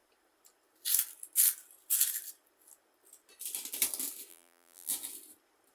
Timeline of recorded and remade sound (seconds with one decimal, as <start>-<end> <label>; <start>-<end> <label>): 0.0-4.3 recorded; 4.3-4.9 remade; 4.9-5.7 recorded